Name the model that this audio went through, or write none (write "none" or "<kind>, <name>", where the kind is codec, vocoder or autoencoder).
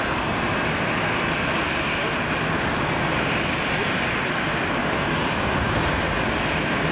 none